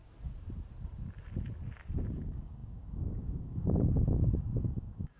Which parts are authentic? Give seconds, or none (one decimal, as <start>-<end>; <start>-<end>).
0.0-2.1